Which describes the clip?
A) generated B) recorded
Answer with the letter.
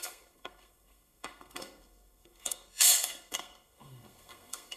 A